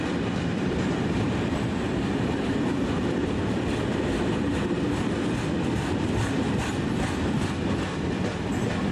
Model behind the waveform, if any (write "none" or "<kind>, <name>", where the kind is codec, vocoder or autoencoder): vocoder, BigVGAN v2